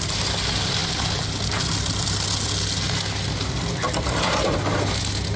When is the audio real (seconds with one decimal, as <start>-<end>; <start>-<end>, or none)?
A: 0.0-5.4